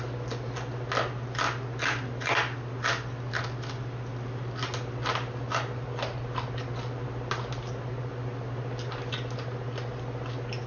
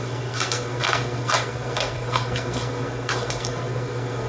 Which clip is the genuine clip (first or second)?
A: first